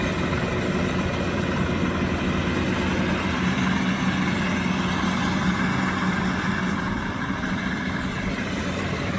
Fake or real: real